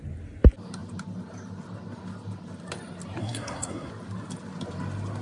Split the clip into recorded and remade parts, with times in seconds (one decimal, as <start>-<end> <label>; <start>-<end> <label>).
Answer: 0.0-3.2 recorded; 3.2-3.9 remade; 3.9-5.2 recorded